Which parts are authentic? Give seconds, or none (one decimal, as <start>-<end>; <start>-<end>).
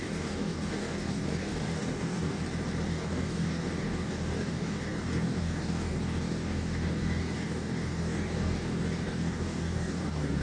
2.4-2.9